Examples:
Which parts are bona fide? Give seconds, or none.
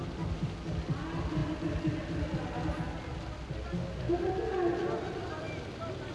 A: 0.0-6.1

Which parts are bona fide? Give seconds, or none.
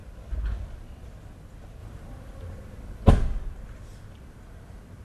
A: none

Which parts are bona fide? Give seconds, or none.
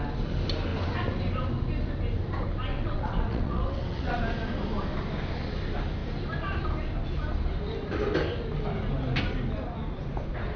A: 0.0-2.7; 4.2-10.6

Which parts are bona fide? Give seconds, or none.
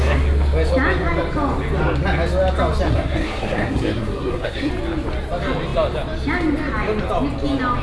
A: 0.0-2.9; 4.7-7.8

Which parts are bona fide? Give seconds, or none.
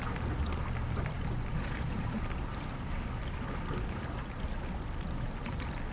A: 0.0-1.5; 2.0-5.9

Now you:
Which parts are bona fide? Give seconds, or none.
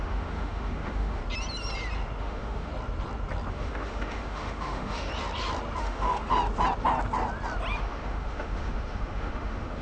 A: 1.2-2.2; 2.7-3.5; 5.1-5.8; 6.3-7.8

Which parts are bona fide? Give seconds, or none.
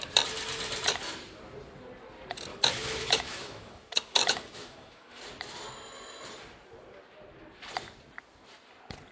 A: 0.0-2.5; 5.2-9.1